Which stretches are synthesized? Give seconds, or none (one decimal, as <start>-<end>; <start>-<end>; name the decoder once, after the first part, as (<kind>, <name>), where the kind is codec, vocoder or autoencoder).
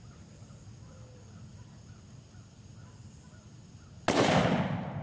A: none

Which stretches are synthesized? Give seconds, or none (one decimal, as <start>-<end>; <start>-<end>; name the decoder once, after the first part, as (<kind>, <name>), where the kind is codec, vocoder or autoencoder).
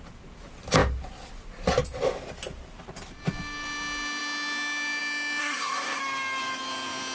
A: 5.4-6.0 (codec, SNAC)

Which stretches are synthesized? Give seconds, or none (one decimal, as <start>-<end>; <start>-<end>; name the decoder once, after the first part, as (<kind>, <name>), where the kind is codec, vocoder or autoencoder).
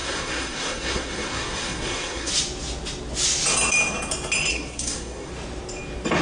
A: 0.0-2.3 (codec, SNAC); 4.5-5.3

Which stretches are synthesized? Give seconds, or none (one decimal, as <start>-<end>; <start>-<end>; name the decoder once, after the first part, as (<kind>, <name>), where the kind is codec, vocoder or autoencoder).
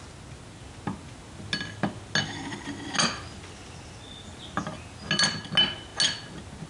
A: none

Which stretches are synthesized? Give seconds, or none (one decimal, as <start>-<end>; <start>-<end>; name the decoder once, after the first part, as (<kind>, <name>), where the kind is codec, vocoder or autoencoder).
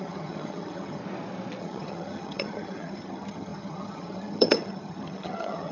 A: 0.0-1.0 (vocoder, HiFi-GAN); 1.6-5.7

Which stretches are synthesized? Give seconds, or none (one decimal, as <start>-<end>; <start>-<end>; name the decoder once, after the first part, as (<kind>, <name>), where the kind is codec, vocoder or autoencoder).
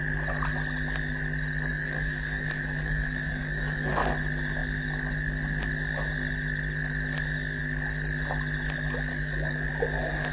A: 1.7-3.9 (codec, DAC); 9.1-9.7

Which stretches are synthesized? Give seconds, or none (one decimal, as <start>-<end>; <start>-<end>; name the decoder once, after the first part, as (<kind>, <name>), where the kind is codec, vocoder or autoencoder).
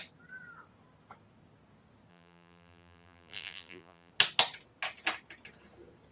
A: 2.1-4.1 (vocoder, BigVGAN v2)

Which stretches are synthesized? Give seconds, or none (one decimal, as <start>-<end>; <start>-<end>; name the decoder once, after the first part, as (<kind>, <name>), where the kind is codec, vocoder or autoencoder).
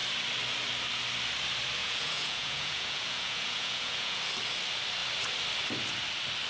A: 1.8-4.2 (vocoder, Vocos)